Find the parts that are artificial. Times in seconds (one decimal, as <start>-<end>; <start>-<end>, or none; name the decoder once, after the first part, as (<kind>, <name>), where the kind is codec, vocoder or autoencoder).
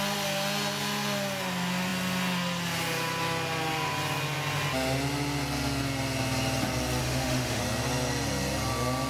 7.0-7.6 (autoencoder, DAC-VAE)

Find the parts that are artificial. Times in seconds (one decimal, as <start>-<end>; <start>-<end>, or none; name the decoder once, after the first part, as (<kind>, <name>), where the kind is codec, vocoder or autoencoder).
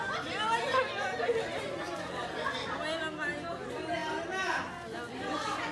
none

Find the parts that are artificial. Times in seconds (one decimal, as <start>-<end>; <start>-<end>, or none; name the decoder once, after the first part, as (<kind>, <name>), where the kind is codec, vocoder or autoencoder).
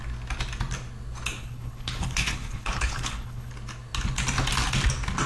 1.4-3.5 (codec, HILCodec)